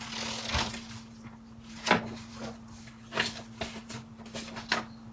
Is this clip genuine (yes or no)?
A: yes